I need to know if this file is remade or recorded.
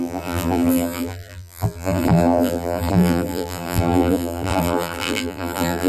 remade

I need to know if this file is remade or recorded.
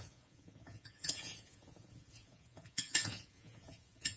remade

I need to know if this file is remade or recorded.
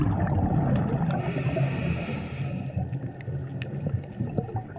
recorded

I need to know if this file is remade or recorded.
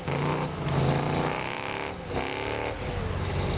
recorded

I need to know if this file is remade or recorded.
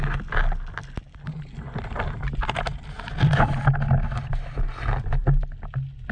recorded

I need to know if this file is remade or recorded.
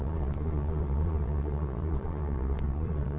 remade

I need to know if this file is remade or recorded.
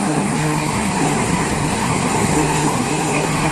remade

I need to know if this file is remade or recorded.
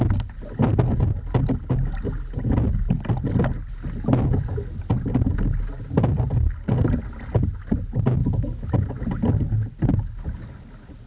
recorded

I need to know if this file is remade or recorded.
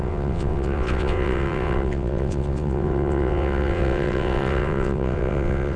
remade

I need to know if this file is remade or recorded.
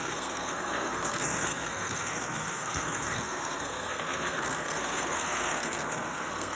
remade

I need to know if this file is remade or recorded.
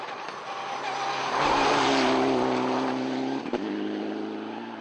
recorded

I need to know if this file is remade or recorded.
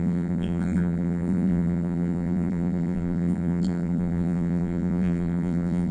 remade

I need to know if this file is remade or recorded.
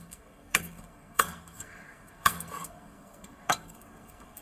remade